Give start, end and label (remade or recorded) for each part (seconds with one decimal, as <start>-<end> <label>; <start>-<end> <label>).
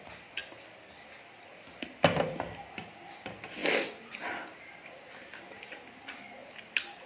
0.0-7.1 recorded